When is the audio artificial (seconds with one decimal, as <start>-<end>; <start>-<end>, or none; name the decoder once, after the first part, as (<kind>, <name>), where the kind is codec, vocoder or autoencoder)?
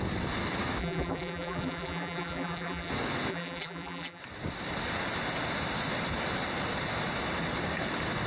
0.8-2.9 (vocoder, BigVGAN v2); 3.3-4.2